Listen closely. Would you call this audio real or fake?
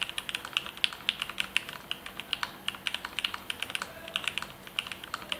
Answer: real